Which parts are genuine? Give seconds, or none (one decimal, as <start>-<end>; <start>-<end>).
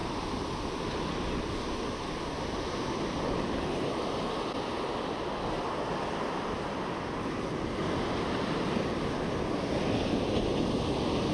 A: 0.0-11.3